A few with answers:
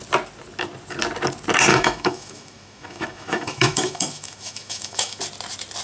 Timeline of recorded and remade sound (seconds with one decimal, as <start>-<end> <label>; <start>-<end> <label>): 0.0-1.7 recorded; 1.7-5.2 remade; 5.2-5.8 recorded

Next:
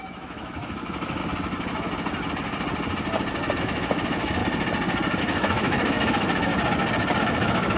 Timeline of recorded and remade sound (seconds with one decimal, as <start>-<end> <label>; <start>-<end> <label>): 0.0-1.2 remade; 1.2-3.6 recorded; 3.6-4.4 remade; 4.4-5.2 recorded; 5.2-6.5 remade; 6.5-7.2 recorded; 7.2-7.8 remade

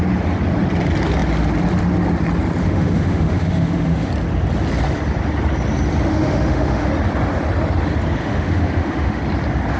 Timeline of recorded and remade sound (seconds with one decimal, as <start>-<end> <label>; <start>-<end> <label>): 0.0-2.6 recorded; 2.6-4.1 remade; 4.1-6.1 recorded; 6.1-6.9 remade; 6.9-8.2 recorded; 8.2-9.2 remade; 9.2-9.8 recorded

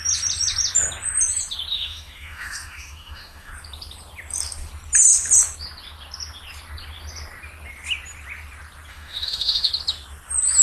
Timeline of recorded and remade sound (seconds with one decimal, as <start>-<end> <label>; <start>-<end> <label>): 0.0-1.7 recorded; 1.7-3.5 remade; 3.5-8.9 recorded; 8.9-9.7 remade; 9.7-10.6 recorded

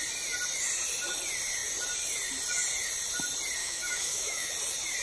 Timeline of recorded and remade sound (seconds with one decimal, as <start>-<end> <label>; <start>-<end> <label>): 0.0-3.6 recorded; 3.6-4.5 remade; 4.5-5.0 recorded

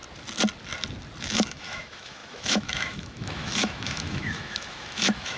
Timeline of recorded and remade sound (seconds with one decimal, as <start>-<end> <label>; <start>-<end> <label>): 0.0-1.2 recorded; 1.2-5.4 remade

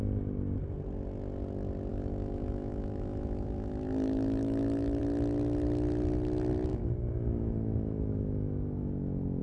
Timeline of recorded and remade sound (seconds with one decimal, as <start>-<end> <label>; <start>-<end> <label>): 0.0-1.9 recorded; 1.9-5.0 remade; 5.0-6.7 recorded; 6.7-9.4 remade